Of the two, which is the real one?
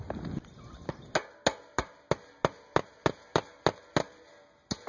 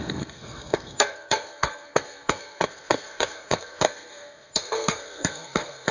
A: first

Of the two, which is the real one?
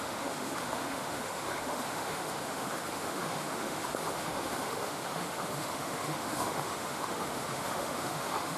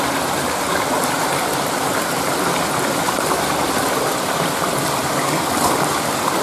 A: second